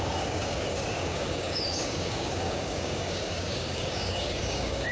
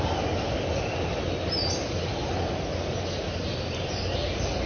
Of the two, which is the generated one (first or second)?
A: first